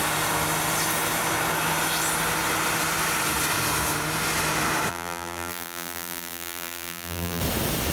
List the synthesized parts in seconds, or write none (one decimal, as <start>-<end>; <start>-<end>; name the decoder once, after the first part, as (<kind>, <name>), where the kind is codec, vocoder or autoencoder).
4.9-7.4 (vocoder, BigVGAN v2)